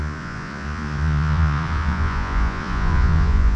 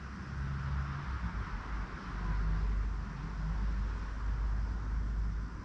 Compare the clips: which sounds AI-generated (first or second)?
first